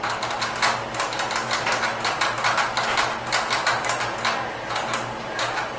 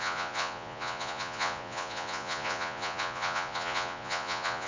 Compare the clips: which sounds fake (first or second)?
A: second